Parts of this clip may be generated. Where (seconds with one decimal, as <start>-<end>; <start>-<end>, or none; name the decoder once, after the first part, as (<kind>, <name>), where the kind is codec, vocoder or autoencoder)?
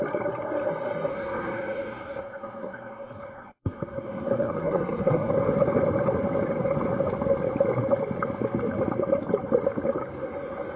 1.1-5.3 (codec, SNAC)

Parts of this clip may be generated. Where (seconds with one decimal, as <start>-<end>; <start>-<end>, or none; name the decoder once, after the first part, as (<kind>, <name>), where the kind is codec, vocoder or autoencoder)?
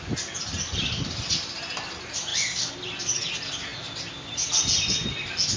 none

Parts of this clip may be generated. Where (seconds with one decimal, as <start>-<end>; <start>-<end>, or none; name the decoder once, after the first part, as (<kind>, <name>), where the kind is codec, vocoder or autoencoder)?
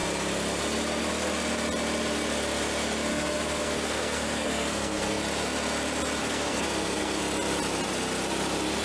3.1-5.2 (codec, SNAC); 6.2-7.2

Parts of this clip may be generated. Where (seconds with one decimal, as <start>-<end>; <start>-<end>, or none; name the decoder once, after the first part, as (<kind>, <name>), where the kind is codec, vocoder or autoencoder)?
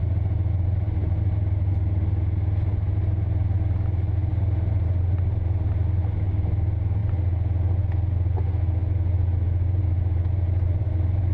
none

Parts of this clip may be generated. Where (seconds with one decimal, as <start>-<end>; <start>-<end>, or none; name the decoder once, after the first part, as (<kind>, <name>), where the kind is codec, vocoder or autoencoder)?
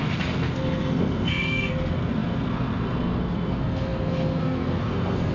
0.0-5.3 (codec, SNAC)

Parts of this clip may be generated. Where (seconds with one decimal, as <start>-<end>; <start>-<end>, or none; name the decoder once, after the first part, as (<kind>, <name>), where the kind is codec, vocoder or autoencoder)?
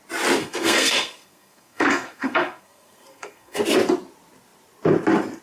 0.4-3.6 (codec, SNAC)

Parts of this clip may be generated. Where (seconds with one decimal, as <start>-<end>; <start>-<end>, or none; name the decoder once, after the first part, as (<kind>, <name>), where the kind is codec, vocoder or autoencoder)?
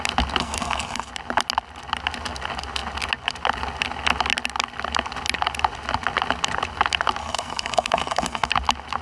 0.4-1.1 (codec, SNAC); 7.2-8.5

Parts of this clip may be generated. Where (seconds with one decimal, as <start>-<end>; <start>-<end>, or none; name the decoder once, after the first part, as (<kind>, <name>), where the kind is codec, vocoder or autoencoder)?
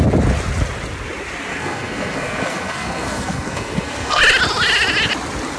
1.5-4.2 (codec, SNAC)